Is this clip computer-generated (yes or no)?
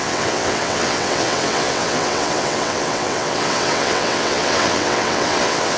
yes